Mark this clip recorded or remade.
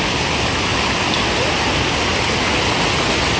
recorded